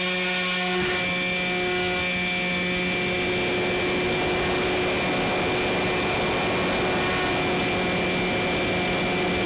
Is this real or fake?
real